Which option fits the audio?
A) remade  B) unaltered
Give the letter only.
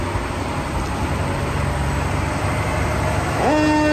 B